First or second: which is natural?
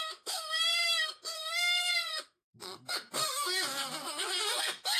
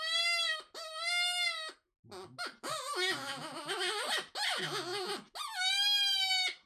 second